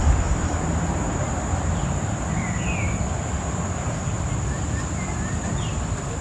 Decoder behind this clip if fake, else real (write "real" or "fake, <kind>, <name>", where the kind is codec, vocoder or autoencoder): real